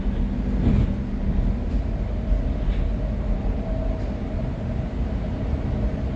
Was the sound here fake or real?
real